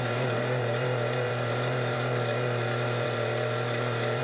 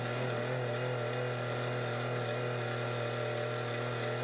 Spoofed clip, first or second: first